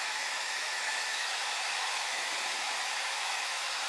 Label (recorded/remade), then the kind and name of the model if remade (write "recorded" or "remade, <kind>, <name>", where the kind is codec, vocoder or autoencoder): remade, autoencoder, DAC-VAE